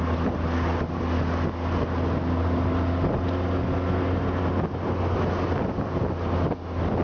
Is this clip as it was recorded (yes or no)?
yes